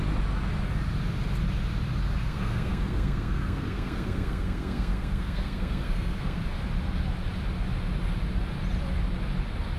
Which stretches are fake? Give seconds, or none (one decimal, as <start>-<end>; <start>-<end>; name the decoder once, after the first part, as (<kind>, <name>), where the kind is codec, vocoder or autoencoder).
2.2-6.4 (codec, SNAC)